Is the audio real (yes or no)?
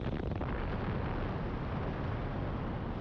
yes